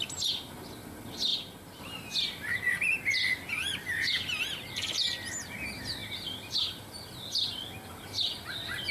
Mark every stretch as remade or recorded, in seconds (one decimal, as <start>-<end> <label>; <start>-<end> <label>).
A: 0.0-8.9 recorded